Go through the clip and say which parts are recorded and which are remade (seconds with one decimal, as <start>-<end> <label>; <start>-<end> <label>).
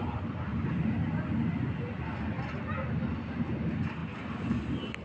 0.0-5.0 recorded